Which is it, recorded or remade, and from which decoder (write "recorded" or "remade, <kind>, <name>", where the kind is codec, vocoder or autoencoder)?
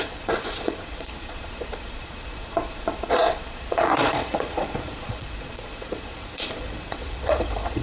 remade, vocoder, Vocos